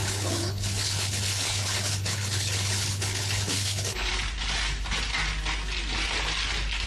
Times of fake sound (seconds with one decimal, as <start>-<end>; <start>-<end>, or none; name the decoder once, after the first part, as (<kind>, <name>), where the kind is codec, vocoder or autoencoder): 0.0-4.1 (codec, HILCodec)